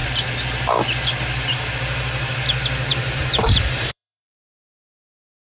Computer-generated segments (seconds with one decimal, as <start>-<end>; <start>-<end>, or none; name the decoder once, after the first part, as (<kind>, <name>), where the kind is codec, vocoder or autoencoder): 2.9-4.9 (vocoder, BigVGAN v2)